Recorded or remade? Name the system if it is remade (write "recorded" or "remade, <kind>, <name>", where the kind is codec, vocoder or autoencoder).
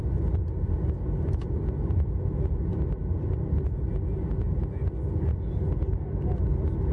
recorded